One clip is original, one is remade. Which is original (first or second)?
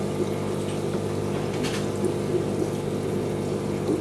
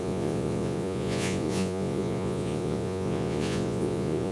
first